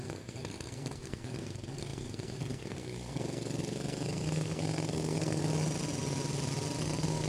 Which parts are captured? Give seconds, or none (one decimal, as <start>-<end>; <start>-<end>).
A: 5.4-6.8